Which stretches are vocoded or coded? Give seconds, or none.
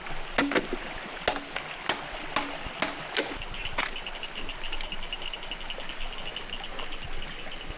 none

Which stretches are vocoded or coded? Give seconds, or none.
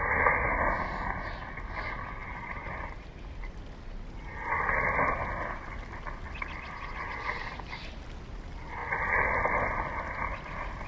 2.2-3.5 (vocoder, BigVGAN v2); 4.3-4.8; 8.8-9.8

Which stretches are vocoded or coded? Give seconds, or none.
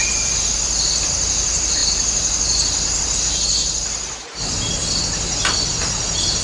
none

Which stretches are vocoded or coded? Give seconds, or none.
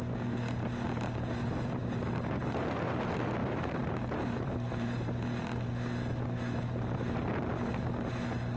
1.4-2.0 (vocoder, BigVGAN v2); 3.4-5.1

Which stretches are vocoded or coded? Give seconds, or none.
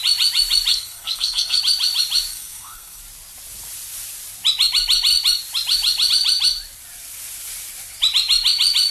0.7-1.6 (codec, SNAC); 2.3-3.0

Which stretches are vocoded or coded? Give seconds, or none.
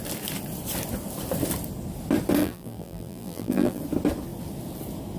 2.4-3.8 (vocoder, BigVGAN v2)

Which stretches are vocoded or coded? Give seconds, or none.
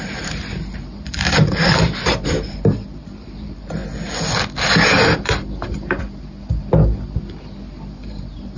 0.0-3.8 (vocoder, BigVGAN v2); 7.9-8.6